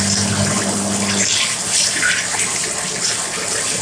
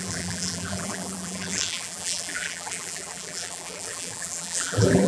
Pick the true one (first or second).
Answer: first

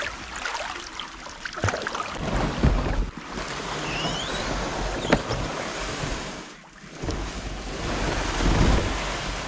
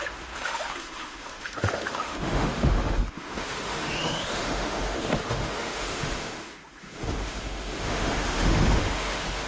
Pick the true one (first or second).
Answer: first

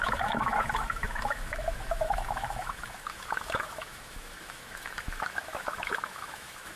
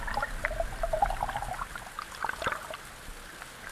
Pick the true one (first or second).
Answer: second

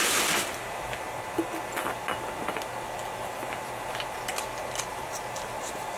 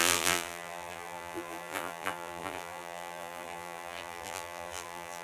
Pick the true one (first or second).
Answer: first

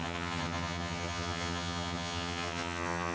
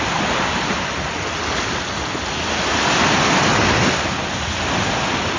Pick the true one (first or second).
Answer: second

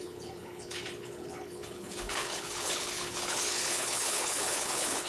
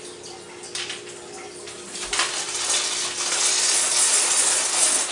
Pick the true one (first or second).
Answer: second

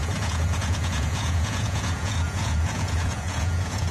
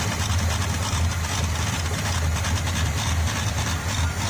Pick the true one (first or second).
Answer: second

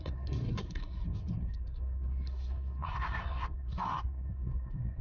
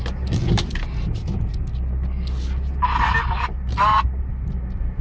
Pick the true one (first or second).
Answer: second